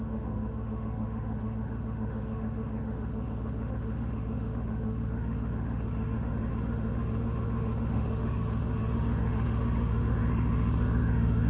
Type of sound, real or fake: fake